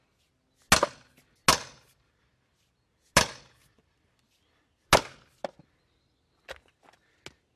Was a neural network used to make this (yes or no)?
no